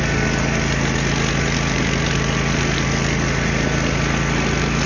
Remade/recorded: recorded